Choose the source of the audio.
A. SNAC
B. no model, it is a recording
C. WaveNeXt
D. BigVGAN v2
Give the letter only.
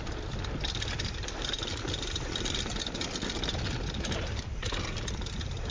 B